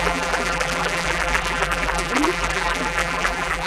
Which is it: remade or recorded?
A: remade